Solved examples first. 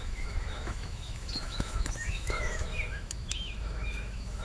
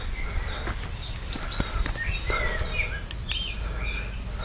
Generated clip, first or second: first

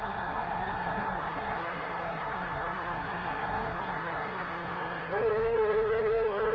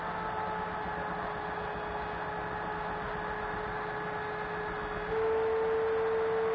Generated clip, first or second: first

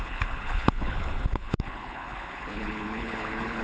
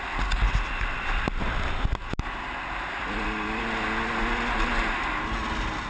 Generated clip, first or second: first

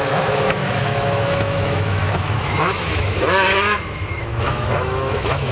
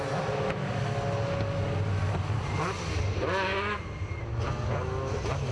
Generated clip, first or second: first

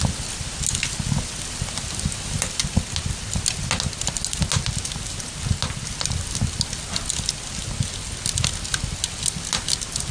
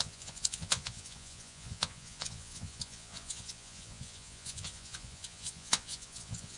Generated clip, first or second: second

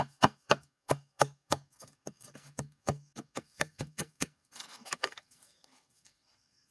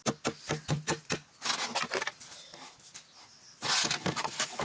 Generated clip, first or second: first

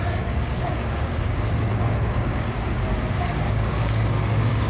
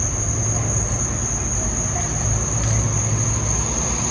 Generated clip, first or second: first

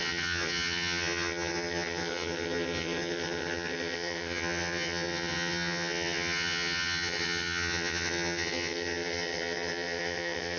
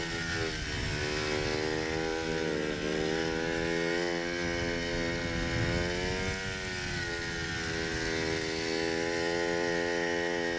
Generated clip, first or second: first